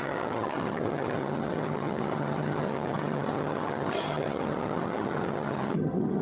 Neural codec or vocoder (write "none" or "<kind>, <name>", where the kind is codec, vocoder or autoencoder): vocoder, HiFi-GAN